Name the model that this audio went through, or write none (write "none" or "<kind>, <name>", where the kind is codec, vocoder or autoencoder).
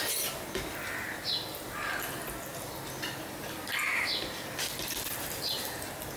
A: none